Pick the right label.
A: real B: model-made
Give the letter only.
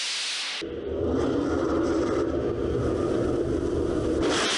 A